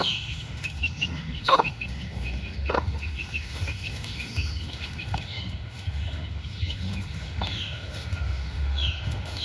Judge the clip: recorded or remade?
remade